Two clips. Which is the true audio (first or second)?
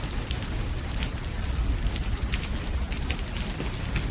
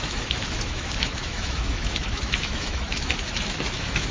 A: first